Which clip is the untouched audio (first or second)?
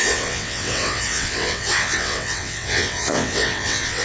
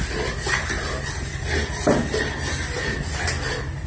second